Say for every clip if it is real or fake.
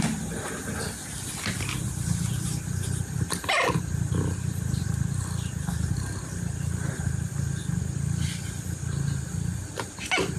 real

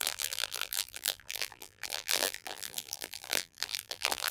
fake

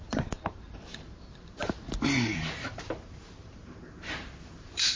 fake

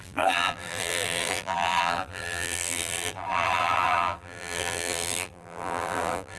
fake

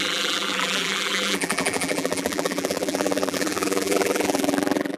fake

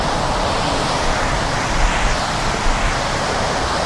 fake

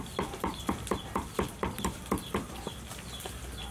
fake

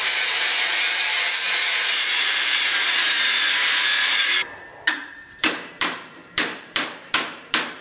fake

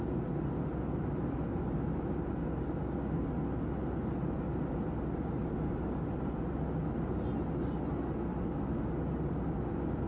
real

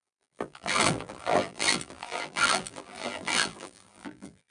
fake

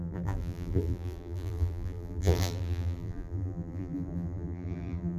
fake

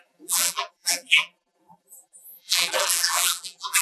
fake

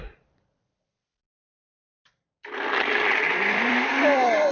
fake